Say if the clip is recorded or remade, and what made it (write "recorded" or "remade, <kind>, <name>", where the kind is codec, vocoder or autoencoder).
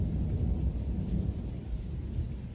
recorded